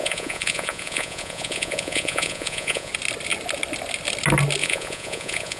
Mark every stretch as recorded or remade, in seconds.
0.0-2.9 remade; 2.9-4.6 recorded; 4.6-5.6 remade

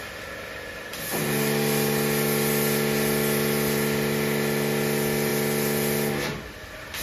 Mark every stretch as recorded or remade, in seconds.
0.0-7.0 recorded